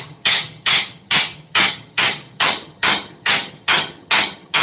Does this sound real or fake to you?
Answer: fake